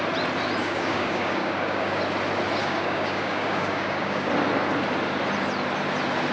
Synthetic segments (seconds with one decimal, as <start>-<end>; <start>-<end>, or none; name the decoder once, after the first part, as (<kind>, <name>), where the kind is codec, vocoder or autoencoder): 0.6-2.0 (codec, DAC); 2.6-4.3